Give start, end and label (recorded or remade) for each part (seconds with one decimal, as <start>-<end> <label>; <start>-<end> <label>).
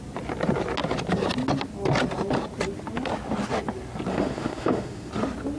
0.0-4.1 recorded; 4.1-5.1 remade; 5.1-5.6 recorded